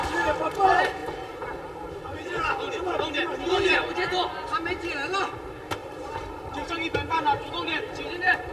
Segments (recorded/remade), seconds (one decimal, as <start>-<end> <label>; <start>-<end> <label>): 0.0-1.0 recorded; 1.0-1.9 remade; 1.9-5.8 recorded; 5.8-8.5 remade